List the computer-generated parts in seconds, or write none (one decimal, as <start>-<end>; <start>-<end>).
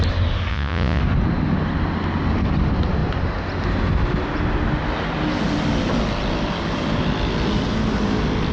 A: 0.5-1.0